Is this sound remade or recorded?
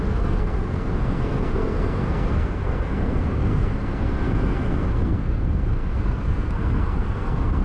remade